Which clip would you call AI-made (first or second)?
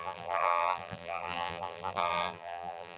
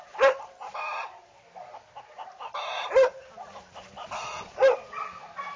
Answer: first